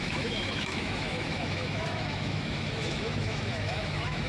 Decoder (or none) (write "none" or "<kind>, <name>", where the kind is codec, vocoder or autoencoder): autoencoder, DAC-VAE